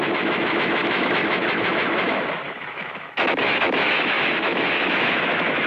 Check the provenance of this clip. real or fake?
fake